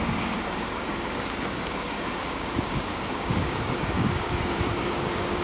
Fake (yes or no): yes